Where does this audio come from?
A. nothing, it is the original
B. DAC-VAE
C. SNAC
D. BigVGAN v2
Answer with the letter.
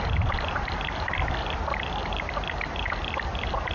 D